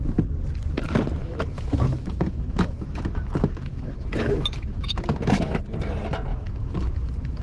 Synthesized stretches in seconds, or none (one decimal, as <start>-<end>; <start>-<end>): 1.2-5.6; 6.3-7.4